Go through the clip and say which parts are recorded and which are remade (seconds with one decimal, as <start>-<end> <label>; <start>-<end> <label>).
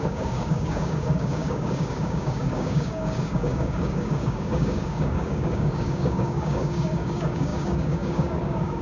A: 0.0-8.8 remade